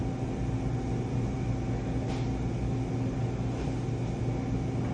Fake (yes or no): no